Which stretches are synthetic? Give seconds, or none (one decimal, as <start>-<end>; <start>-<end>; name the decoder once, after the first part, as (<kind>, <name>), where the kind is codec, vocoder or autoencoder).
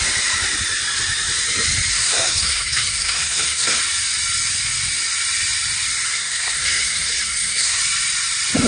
1.9-3.8 (codec, SNAC); 6.1-7.8